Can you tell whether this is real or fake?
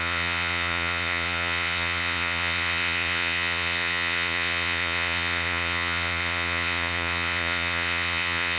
fake